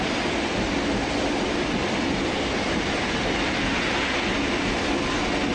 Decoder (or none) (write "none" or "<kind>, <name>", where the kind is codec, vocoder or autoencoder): none